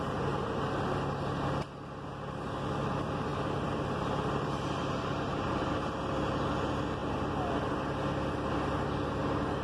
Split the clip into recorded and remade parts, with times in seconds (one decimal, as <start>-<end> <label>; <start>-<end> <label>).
0.0-3.3 recorded; 3.3-5.7 remade; 5.7-9.6 recorded